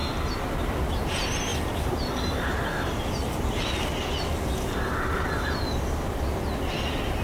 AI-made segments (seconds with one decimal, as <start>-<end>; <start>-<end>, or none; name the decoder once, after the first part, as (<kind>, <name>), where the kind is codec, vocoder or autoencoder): none